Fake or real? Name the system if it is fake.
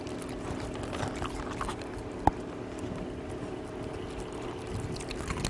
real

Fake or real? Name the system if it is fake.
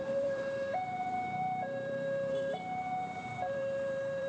fake, vocoder, BigVGAN v2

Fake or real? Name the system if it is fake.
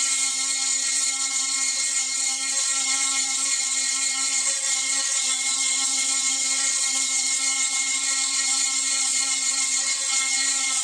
fake, vocoder, WaveNeXt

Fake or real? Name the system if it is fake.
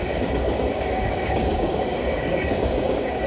fake, codec, DAC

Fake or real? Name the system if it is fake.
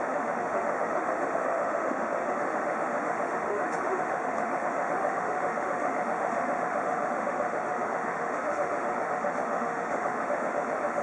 fake, autoencoder, DAC-VAE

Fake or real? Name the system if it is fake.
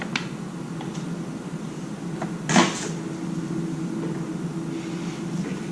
real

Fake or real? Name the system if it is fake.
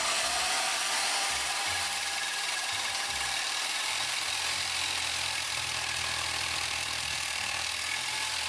fake, vocoder, BigVGAN v2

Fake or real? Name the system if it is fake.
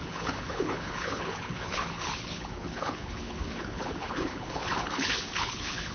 fake, codec, HILCodec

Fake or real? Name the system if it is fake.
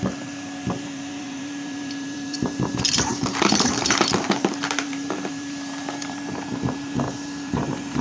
fake, vocoder, BigVGAN v2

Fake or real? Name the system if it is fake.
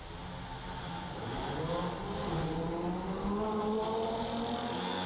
real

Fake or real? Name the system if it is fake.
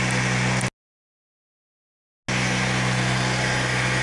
real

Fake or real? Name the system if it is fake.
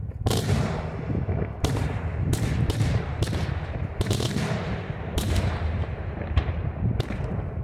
fake, vocoder, BigVGAN v2